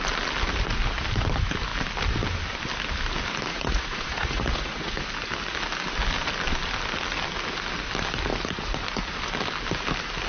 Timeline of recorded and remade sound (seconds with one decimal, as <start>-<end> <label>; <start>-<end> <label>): 0.0-3.5 recorded; 3.5-4.9 remade; 4.9-10.3 recorded